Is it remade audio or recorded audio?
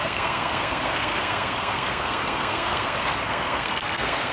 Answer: remade